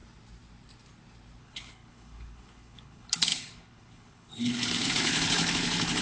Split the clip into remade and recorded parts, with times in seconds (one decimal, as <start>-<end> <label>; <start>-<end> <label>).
0.0-1.4 recorded; 1.4-6.0 remade